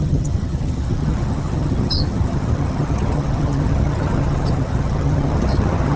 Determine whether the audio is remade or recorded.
remade